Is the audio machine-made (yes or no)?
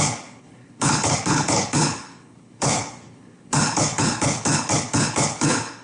yes